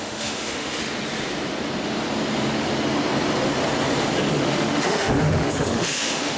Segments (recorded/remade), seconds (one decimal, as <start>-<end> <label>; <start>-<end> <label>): 0.0-0.8 remade; 0.8-4.3 recorded; 4.3-6.4 remade